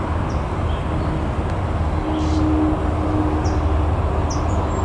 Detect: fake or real real